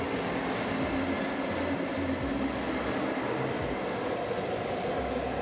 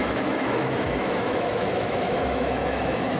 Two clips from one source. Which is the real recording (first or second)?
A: first